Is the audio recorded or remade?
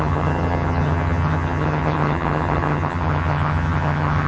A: remade